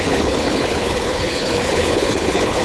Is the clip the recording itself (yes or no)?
no